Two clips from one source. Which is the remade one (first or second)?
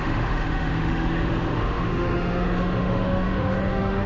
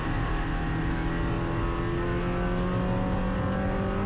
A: first